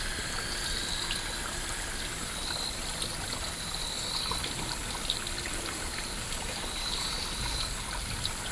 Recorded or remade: recorded